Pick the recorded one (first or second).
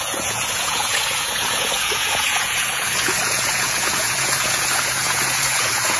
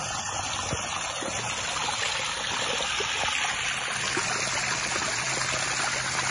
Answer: second